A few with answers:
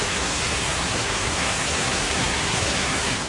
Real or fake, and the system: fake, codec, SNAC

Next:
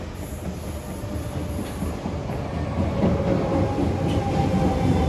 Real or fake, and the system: real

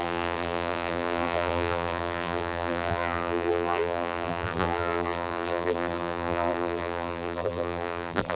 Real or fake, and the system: fake, vocoder, BigVGAN v2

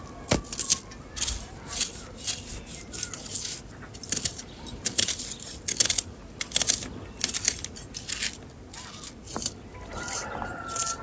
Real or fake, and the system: real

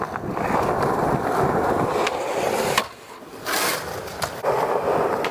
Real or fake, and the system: real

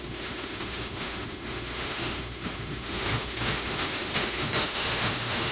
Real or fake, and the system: fake, autoencoder, DAC-VAE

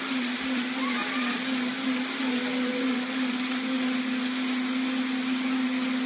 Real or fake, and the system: real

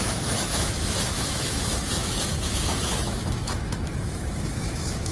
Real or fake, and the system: fake, autoencoder, DAC-VAE